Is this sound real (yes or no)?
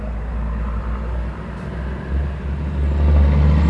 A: yes